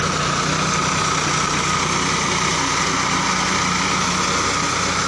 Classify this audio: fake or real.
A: real